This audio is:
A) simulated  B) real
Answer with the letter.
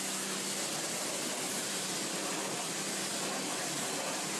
B